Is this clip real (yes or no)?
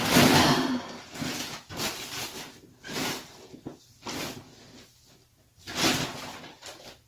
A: yes